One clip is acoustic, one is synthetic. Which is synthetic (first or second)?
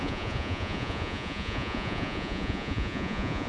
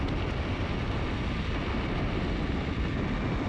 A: first